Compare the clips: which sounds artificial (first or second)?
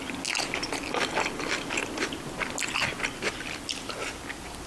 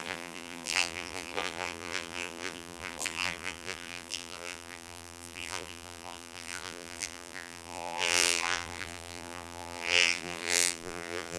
second